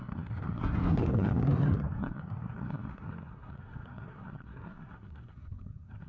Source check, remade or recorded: remade